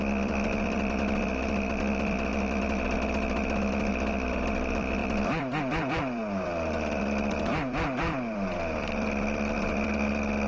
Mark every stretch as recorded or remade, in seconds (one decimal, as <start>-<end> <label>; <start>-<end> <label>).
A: 0.0-2.3 remade; 2.3-3.9 recorded; 3.9-10.5 remade